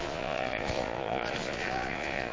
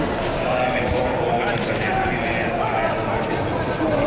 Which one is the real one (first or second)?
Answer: second